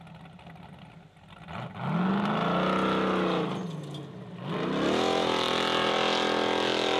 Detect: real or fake real